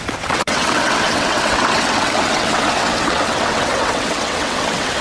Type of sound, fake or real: fake